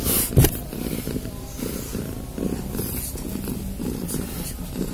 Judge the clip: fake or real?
real